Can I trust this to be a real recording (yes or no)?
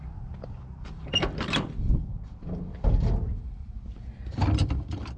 no